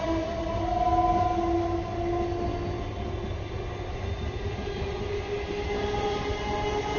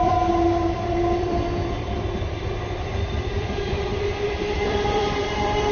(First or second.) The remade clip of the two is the second